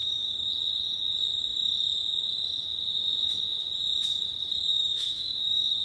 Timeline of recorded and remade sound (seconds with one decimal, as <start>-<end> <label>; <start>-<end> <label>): 0.0-0.5 remade; 0.5-4.7 recorded; 4.7-5.8 remade